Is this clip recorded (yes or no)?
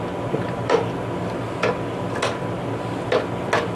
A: yes